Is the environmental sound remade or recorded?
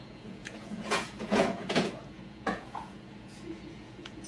remade